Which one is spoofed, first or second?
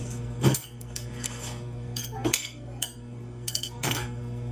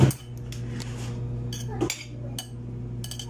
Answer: first